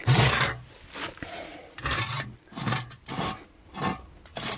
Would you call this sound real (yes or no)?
yes